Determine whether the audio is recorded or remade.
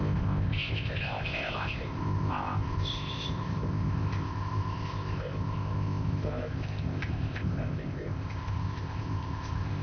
remade